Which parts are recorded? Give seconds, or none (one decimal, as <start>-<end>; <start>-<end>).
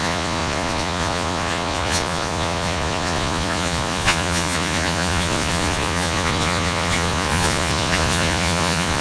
none